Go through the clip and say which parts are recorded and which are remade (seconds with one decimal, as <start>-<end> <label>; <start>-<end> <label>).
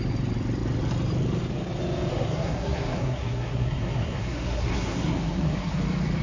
0.0-2.1 recorded; 2.1-5.8 remade; 5.8-6.2 recorded